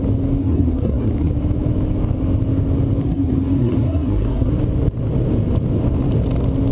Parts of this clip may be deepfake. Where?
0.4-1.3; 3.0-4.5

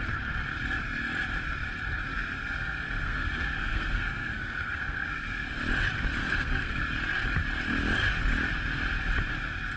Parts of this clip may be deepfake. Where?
2.1-5.6; 6.2-6.8

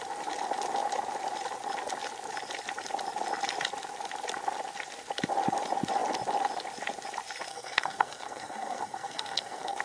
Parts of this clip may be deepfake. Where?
7.5-9.8